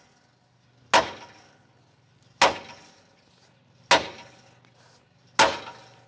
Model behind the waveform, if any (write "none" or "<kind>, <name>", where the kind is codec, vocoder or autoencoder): none